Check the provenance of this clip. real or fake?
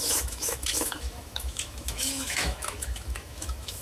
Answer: fake